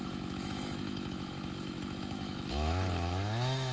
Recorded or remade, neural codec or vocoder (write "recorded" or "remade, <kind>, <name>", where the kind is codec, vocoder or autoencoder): remade, autoencoder, DAC-VAE